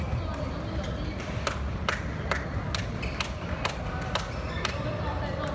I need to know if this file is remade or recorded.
recorded